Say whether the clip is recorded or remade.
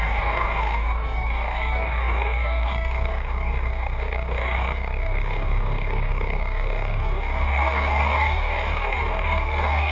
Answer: remade